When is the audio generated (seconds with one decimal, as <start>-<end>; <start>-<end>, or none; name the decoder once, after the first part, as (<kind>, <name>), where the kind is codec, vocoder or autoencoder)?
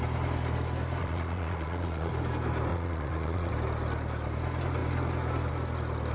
1.0-2.1 (vocoder, Vocos); 2.7-3.5